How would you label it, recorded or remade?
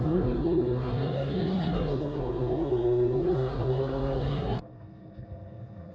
remade